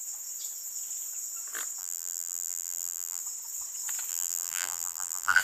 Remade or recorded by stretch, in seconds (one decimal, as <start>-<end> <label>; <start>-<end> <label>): 0.0-1.8 recorded; 1.8-3.2 remade; 3.2-4.1 recorded; 4.1-5.4 remade